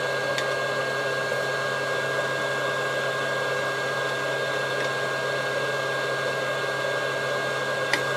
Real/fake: real